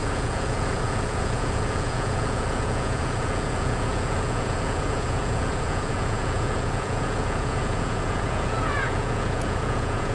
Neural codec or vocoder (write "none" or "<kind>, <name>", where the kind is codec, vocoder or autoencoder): vocoder, Vocos